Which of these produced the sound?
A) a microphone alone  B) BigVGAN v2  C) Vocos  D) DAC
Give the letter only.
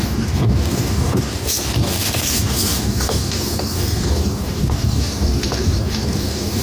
D